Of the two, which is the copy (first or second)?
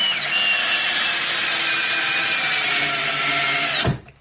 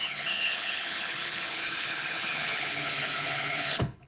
second